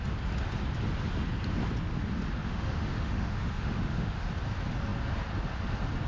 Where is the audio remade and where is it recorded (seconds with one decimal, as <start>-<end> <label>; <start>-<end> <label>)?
0.0-2.5 recorded; 2.5-4.3 remade; 4.3-6.1 recorded